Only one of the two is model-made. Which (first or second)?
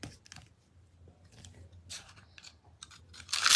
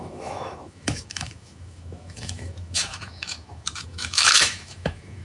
second